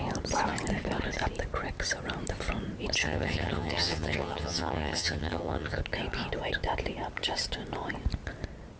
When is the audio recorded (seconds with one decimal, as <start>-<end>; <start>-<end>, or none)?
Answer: 0.0-3.0; 5.8-8.8